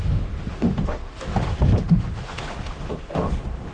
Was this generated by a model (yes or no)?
yes